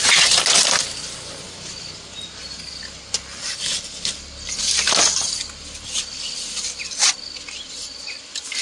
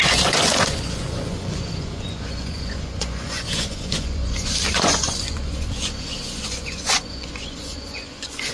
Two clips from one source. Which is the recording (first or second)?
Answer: first